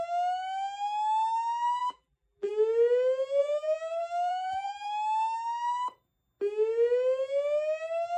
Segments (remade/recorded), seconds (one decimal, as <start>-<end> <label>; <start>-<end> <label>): 0.0-1.8 recorded; 1.8-2.5 remade; 2.5-3.4 recorded; 3.4-4.9 remade; 4.9-8.2 recorded